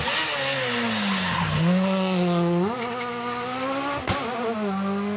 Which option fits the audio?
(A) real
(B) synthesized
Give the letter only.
A